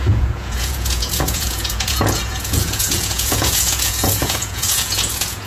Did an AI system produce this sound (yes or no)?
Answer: yes